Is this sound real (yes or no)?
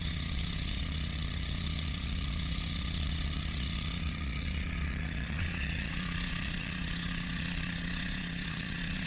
no